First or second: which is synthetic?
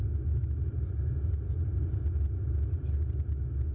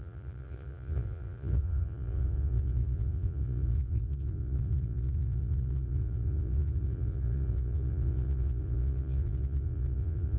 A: second